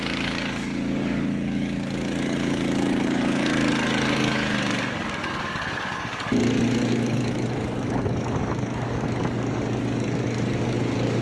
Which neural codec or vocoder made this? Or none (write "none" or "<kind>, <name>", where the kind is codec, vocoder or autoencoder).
codec, DAC